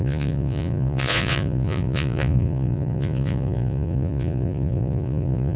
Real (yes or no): no